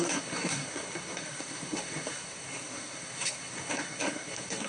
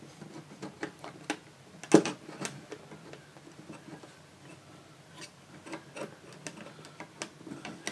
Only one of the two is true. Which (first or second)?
second